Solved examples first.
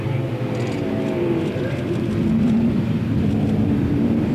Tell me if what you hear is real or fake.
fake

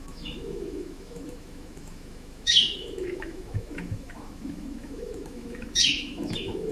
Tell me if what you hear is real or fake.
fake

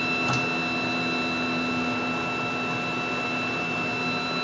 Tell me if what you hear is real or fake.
real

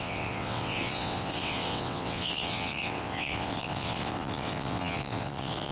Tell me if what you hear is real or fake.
fake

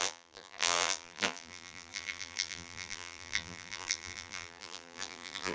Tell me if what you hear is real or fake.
fake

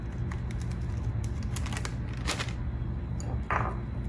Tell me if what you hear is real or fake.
real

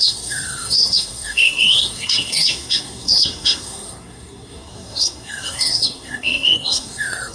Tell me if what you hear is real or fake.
fake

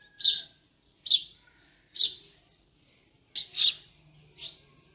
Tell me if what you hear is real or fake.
real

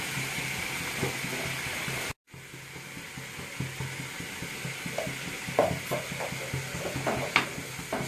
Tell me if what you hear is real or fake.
real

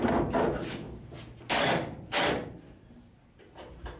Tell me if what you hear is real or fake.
fake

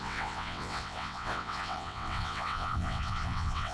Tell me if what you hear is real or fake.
fake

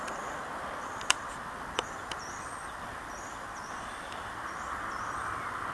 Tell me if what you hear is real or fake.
fake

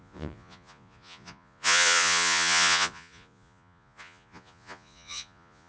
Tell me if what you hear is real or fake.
fake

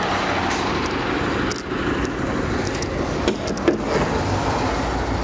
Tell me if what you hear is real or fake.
real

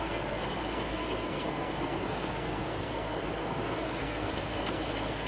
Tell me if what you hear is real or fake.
fake